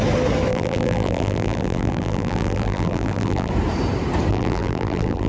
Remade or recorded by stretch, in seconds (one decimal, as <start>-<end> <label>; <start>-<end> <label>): 0.0-0.5 recorded; 0.5-3.5 remade; 3.5-4.3 recorded; 4.3-5.3 remade